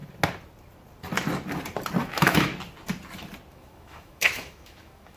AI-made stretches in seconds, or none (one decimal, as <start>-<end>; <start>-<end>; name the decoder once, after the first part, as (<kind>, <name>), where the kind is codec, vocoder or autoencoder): 2.0-2.5 (autoencoder, DAC-VAE); 3.5-5.2